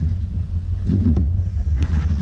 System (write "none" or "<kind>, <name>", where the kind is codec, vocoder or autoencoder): vocoder, Vocos